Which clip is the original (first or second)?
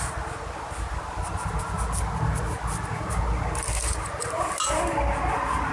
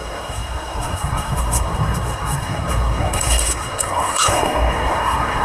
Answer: first